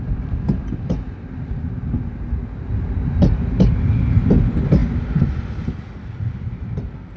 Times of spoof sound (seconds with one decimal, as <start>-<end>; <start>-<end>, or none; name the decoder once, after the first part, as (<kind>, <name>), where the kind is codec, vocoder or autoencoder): none